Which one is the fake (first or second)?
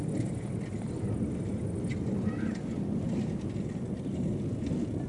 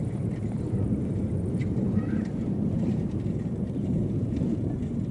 second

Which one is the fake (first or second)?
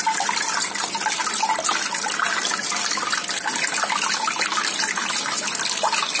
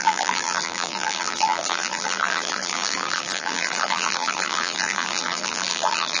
second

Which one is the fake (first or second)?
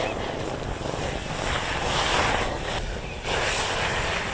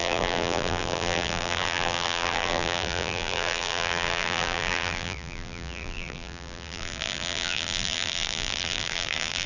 second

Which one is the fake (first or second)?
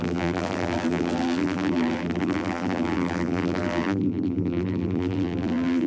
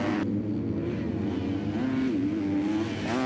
first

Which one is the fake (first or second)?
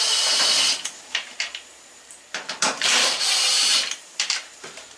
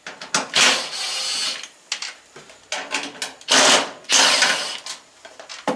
first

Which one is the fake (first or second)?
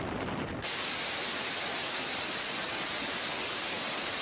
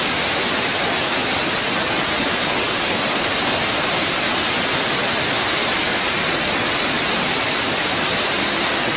first